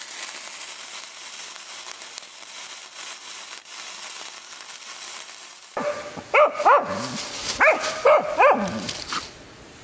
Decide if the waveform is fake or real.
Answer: real